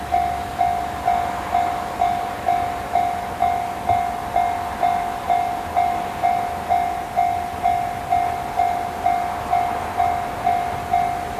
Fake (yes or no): no